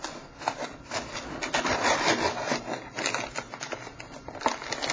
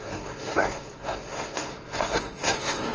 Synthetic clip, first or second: second